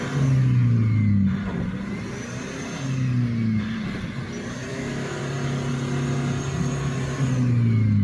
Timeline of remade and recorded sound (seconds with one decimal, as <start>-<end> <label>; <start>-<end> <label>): 0.0-4.7 recorded; 4.7-5.2 remade; 5.2-8.0 recorded